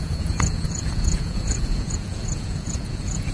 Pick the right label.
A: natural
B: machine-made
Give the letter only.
B